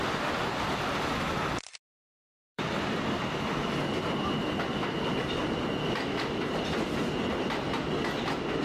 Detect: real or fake fake